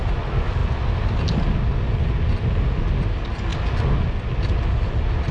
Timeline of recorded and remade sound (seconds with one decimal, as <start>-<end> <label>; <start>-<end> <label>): 0.0-5.3 recorded